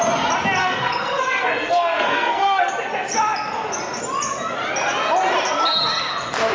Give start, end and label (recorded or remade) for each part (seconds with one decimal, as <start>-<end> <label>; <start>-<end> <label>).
0.0-0.6 recorded; 0.6-2.7 remade; 2.7-6.5 recorded

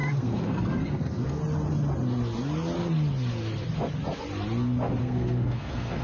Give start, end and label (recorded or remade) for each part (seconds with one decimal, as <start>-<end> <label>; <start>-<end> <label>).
0.0-1.4 remade; 1.4-5.0 recorded; 5.0-6.0 remade

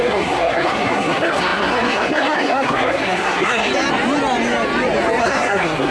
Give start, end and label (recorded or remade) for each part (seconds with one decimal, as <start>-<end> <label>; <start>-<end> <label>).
0.0-3.7 remade; 3.7-5.2 recorded; 5.2-5.9 remade

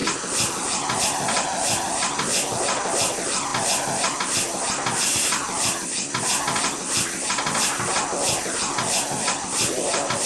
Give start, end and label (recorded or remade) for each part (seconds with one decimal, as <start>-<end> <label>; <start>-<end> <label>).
0.0-10.3 recorded